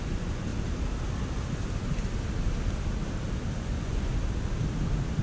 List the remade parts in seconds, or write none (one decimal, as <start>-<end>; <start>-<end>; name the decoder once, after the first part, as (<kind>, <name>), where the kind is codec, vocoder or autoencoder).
0.0-0.5 (vocoder, Vocos); 3.6-4.1